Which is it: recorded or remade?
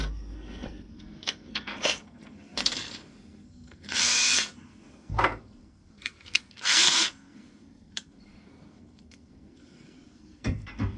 remade